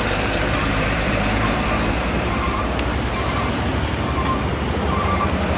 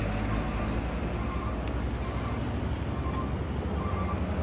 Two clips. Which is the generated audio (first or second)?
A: first